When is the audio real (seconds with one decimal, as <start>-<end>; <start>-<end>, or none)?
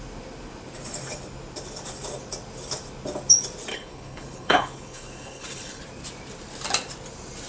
0.0-3.7; 5.8-7.5